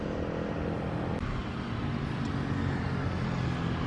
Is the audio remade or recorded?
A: recorded